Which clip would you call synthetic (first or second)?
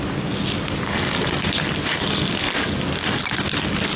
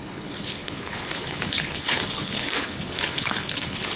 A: second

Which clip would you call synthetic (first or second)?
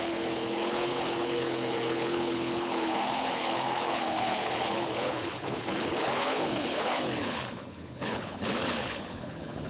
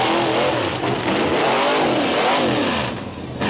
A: first